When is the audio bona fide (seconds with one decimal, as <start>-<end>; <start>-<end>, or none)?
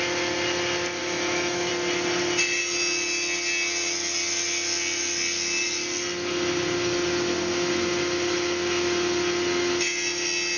0.0-1.0; 1.7-10.6